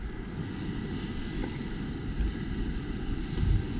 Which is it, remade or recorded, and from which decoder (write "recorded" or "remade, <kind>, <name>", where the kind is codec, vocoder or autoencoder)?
recorded